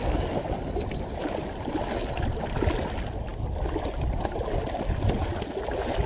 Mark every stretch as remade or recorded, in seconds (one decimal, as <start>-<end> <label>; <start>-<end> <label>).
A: 0.0-6.1 recorded